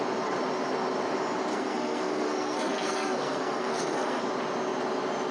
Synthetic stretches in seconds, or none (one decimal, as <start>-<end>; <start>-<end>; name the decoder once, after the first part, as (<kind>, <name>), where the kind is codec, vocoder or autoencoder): 1.5-4.2 (codec, SNAC)